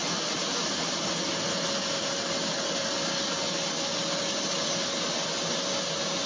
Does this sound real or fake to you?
real